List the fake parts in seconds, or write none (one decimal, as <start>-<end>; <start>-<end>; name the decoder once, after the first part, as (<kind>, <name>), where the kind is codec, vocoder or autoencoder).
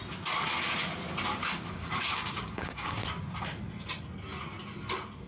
1.4-3.0 (codec, DAC)